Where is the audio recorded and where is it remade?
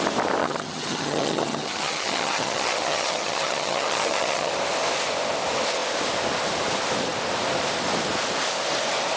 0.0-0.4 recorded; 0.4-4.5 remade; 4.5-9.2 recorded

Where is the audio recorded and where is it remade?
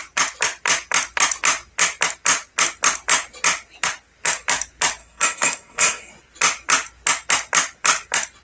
0.0-5.0 recorded; 5.0-6.1 remade; 6.1-8.4 recorded